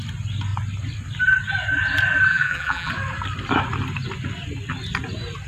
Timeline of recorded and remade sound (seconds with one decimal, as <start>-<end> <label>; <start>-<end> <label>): 0.0-2.3 recorded; 2.3-2.9 remade; 2.9-5.5 recorded

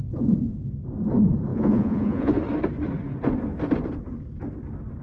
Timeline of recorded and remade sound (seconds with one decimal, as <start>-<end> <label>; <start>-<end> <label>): 0.0-1.5 recorded; 1.5-2.3 remade; 2.3-5.0 recorded

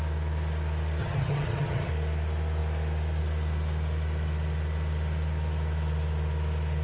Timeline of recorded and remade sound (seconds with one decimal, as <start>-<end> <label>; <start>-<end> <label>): 0.0-1.0 recorded; 1.0-1.9 remade; 1.9-6.8 recorded

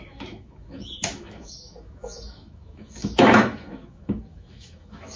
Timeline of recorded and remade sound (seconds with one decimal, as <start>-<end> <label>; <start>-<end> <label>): 0.0-5.2 remade

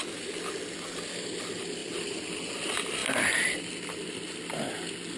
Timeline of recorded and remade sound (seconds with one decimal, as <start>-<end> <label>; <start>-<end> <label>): 0.0-5.2 recorded